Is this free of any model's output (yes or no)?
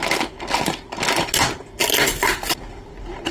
yes